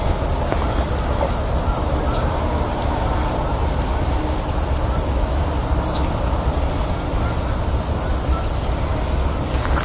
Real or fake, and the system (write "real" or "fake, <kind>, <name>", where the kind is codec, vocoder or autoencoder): real